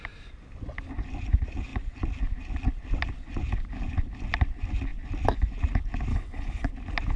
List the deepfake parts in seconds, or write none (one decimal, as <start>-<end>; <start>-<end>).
6.1-6.7